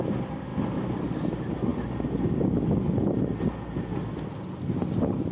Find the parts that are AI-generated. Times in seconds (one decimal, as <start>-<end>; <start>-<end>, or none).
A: none